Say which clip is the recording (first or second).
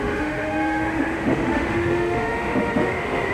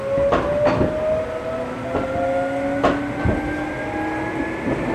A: second